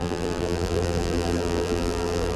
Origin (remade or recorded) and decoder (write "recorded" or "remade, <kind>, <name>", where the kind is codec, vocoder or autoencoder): remade, vocoder, BigVGAN v2